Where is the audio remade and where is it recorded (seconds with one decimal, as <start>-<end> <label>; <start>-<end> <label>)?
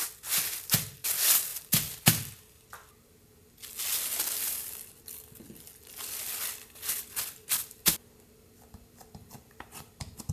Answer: 0.0-6.5 recorded; 6.5-10.3 remade